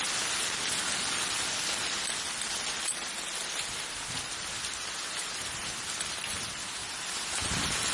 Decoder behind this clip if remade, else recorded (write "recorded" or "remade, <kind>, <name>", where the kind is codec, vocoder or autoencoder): recorded